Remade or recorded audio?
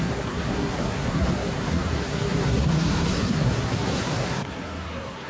remade